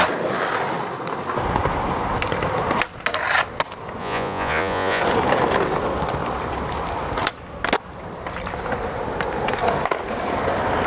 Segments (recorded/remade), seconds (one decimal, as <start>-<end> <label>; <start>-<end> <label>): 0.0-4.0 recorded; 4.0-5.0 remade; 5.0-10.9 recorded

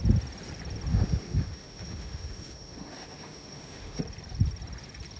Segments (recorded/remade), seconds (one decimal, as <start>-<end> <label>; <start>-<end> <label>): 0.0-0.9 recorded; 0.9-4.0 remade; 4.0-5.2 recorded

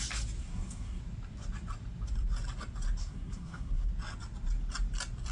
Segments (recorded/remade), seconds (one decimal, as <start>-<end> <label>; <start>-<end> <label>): 0.0-0.4 recorded; 0.4-1.0 remade; 1.0-3.0 recorded; 3.0-3.9 remade; 3.9-5.3 recorded

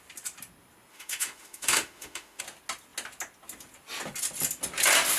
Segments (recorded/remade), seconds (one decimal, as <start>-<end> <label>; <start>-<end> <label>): 0.0-0.9 recorded; 0.9-2.4 remade; 2.4-5.2 recorded

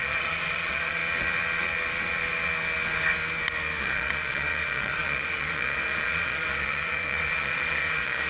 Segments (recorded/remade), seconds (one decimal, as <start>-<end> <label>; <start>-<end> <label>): 0.0-1.0 remade; 1.0-3.8 recorded; 3.8-8.3 remade

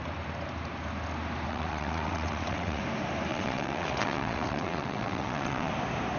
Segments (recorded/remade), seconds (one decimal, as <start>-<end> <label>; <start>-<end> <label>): 0.0-1.5 recorded; 1.5-2.8 remade; 2.8-3.3 recorded; 3.3-5.7 remade; 5.7-6.2 recorded